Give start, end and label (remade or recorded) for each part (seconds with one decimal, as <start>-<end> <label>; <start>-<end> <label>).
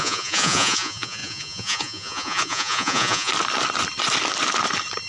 0.0-3.3 remade; 3.3-5.1 recorded